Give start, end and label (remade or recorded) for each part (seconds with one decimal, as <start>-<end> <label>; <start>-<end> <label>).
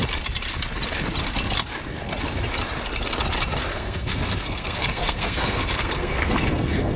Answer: 0.0-3.7 recorded; 3.7-7.0 remade